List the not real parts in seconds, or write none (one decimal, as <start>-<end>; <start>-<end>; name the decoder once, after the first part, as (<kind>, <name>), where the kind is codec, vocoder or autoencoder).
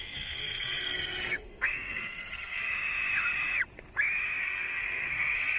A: 0.0-2.7 (codec, SNAC); 4.4-5.6